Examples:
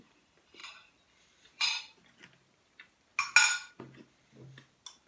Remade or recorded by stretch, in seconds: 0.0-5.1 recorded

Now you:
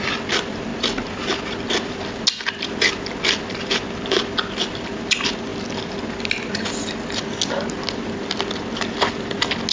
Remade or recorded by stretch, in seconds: 0.0-9.7 recorded